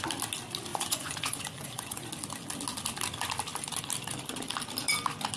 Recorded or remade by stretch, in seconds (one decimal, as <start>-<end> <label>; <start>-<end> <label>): 0.0-0.7 recorded; 0.7-2.1 remade; 2.1-5.4 recorded